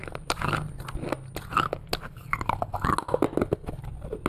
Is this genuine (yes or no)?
yes